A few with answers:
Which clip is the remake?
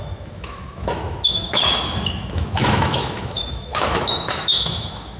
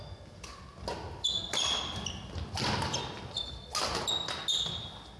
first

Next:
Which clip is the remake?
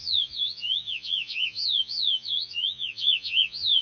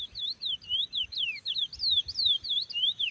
first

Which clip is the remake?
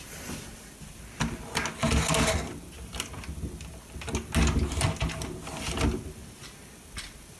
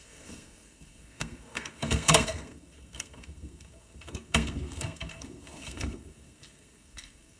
second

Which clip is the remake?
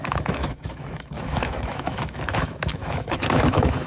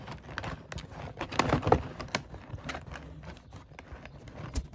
first